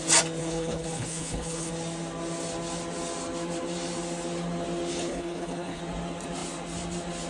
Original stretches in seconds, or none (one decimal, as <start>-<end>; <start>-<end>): 0.0-0.4; 1.7-4.9; 5.8-7.3

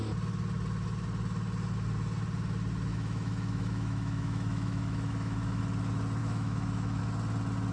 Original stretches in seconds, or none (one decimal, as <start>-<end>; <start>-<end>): 0.0-2.9; 5.6-6.2; 7.0-7.7

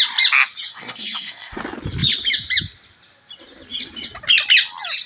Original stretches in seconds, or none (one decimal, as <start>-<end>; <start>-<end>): 0.0-0.7; 1.6-5.1

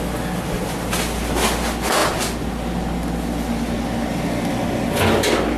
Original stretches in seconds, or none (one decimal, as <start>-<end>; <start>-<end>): 0.0-5.6

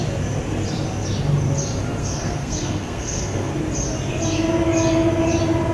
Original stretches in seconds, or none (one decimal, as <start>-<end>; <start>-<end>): 0.0-2.0; 3.5-5.7

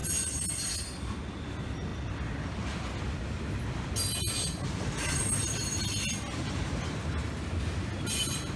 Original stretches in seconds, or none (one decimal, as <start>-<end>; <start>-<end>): 0.0-8.6